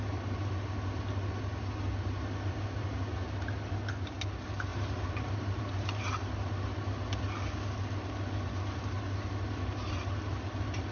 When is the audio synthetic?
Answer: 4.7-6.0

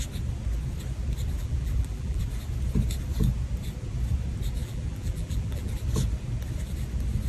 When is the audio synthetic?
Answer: 1.4-2.2; 4.6-5.7